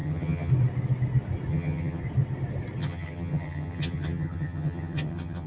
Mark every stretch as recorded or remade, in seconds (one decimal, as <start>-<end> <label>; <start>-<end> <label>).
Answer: 0.0-0.5 remade; 0.5-1.5 recorded; 1.5-2.0 remade; 2.0-2.8 recorded; 2.8-5.5 remade